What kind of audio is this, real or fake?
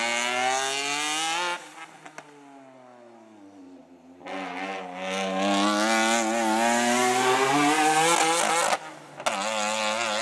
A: real